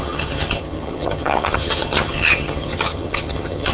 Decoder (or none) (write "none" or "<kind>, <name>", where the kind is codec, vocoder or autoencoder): vocoder, HiFi-GAN